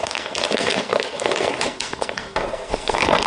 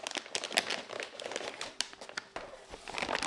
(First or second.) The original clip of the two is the second